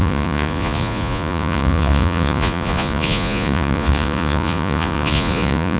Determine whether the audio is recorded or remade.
remade